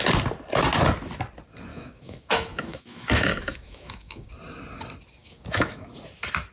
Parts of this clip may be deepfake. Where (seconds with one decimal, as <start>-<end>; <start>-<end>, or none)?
1.7-4.3; 5.2-5.9